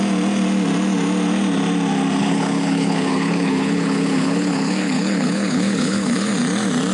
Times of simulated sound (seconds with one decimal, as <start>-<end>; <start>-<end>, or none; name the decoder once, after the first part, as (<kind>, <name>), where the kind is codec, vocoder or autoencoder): 2.2-6.3 (codec, HILCodec)